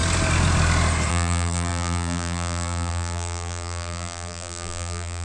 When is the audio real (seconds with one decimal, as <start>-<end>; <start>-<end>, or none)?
0.0-1.1